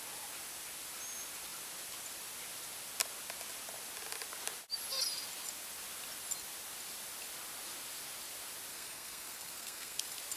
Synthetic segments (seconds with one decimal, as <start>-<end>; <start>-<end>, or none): 8.7-10.0